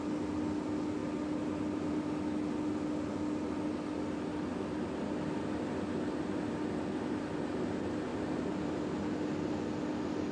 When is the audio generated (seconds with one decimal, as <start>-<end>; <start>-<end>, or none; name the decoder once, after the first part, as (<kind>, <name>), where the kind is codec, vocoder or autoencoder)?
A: 8.1-8.8 (vocoder, BigVGAN v2)